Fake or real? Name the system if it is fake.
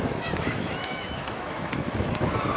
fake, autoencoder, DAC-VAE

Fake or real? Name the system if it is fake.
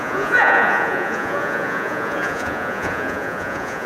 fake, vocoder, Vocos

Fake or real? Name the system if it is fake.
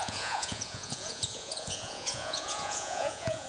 fake, vocoder, Vocos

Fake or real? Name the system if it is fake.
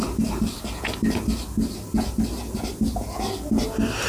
real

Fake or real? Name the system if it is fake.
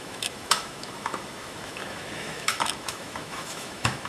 fake, autoencoder, DAC-VAE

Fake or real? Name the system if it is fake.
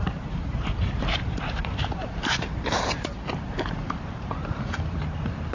fake, vocoder, BigVGAN v2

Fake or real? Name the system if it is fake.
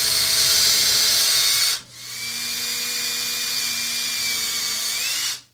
real